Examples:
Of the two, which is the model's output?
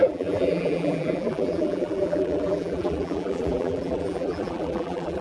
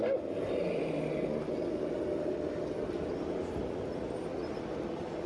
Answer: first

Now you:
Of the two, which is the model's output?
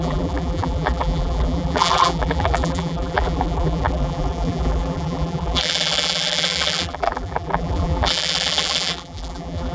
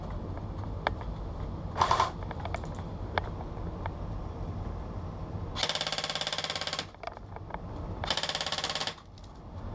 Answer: first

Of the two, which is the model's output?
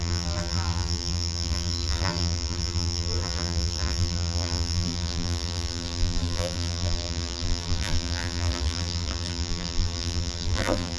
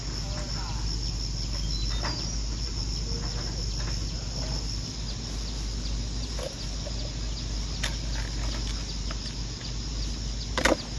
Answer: first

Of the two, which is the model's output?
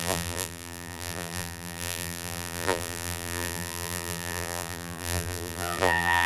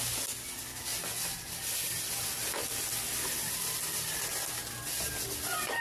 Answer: first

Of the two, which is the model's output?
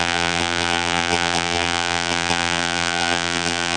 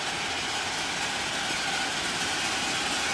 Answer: first